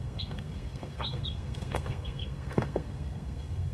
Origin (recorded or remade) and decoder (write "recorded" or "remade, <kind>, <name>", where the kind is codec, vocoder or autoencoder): remade, codec, SNAC